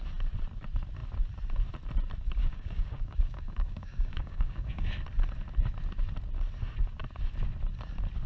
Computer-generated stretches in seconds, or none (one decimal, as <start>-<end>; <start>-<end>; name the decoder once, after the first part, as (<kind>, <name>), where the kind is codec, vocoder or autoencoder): 2.4-4.9 (codec, DAC)